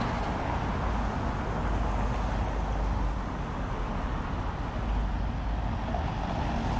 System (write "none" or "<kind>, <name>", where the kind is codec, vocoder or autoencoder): none